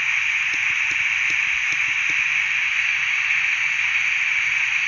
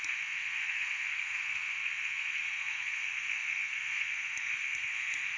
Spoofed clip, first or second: second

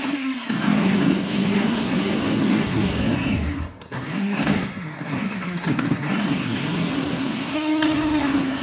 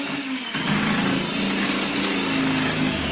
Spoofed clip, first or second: first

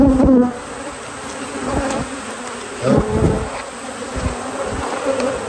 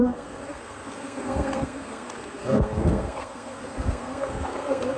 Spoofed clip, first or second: second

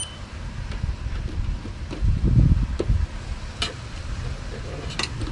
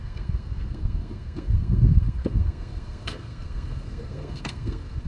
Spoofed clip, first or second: second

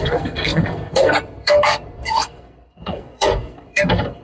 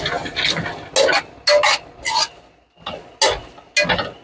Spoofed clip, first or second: first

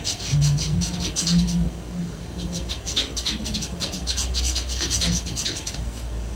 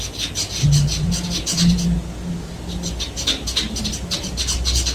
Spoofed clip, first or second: first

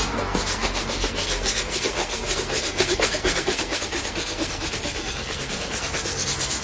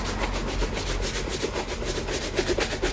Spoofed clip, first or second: first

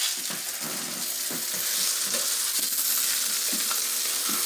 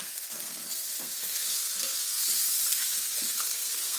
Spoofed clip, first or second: second